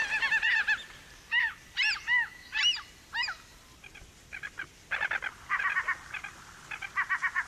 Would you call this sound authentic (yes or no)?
yes